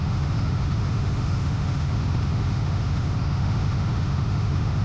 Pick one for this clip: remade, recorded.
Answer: remade